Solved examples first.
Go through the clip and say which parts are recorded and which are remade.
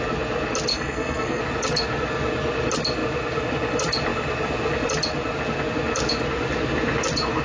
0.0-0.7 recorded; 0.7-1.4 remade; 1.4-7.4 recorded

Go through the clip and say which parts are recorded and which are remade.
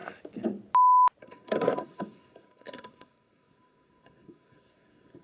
0.0-1.2 recorded; 1.2-5.2 remade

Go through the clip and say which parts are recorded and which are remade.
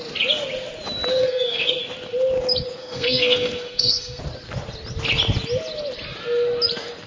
0.0-1.1 recorded; 1.1-1.8 remade; 1.8-2.8 recorded; 2.8-4.2 remade; 4.2-7.1 recorded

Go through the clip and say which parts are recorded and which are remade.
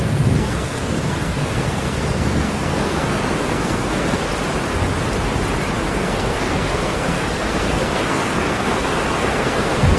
0.0-4.2 remade; 4.2-5.9 recorded; 5.9-10.0 remade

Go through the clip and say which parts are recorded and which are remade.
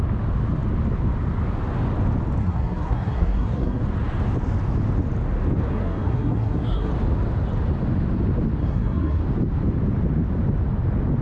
0.0-2.4 recorded; 2.4-3.8 remade; 3.8-5.7 recorded; 5.7-6.9 remade; 6.9-8.6 recorded; 8.6-9.2 remade; 9.2-11.2 recorded